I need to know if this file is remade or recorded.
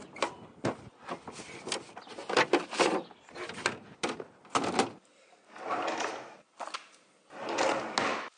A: recorded